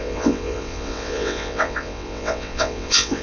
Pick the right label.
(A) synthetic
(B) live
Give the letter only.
A